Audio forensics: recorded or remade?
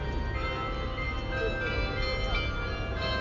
recorded